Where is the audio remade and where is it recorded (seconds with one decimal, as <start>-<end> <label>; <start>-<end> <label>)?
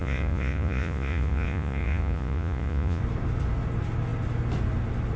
0.0-3.0 remade; 3.0-5.2 recorded